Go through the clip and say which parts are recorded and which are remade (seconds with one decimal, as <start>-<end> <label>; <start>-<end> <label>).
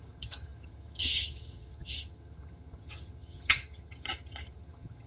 0.0-5.1 remade